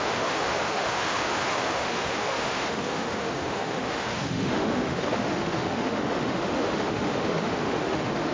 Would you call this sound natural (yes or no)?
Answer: no